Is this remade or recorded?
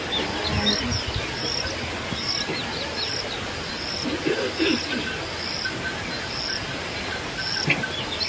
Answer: recorded